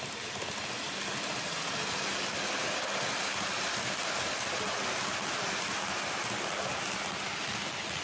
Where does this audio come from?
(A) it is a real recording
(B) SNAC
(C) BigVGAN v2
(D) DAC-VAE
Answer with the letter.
A